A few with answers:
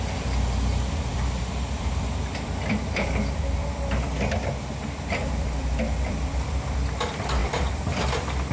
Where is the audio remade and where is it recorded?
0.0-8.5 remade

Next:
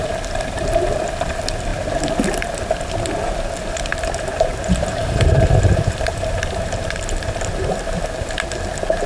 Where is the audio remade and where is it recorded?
0.0-3.9 recorded; 3.9-8.0 remade; 8.0-9.1 recorded

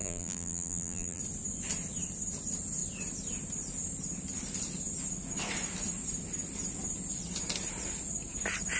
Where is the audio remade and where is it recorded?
0.0-1.2 remade; 1.2-8.8 recorded

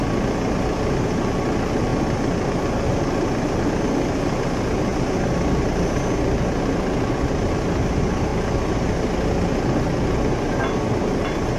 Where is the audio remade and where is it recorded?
0.0-11.6 recorded

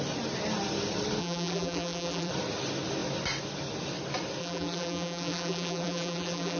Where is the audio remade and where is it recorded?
0.0-1.2 recorded; 1.2-2.3 remade; 2.3-4.4 recorded; 4.4-6.6 remade

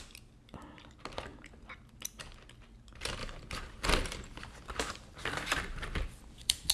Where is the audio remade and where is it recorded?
0.0-3.2 recorded; 3.2-6.7 remade

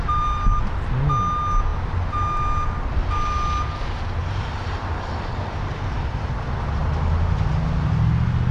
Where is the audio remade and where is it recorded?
0.0-4.2 recorded; 4.2-6.2 remade; 6.2-8.5 recorded